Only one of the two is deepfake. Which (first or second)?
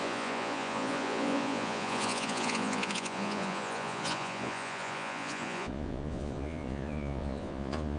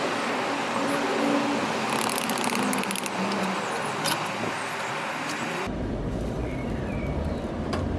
first